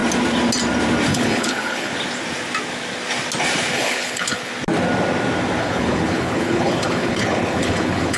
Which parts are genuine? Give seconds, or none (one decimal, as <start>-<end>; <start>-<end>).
0.0-1.1; 1.9-3.7; 4.5-5.6